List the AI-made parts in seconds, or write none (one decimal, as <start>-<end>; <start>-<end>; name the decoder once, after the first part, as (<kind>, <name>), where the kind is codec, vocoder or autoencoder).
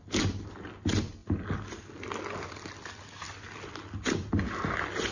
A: none